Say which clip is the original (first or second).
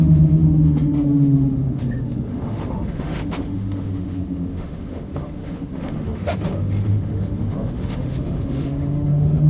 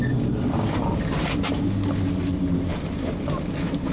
second